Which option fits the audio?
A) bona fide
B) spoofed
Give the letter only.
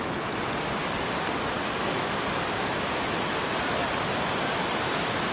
A